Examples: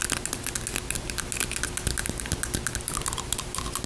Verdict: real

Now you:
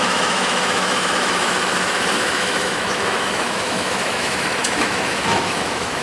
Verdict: fake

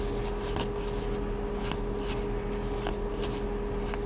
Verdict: real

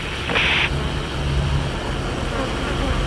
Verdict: real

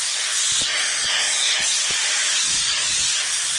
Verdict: real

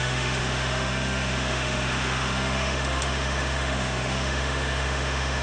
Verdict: fake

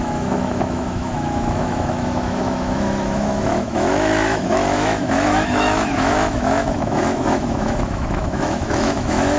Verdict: fake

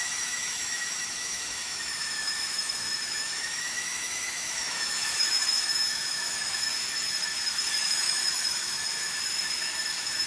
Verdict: fake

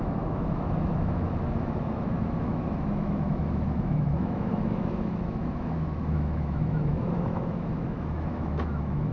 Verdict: fake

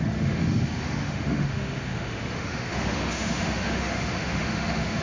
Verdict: fake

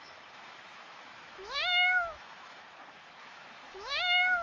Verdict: fake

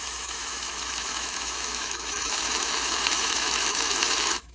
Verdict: fake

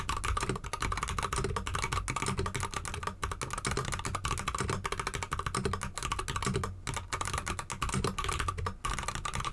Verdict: real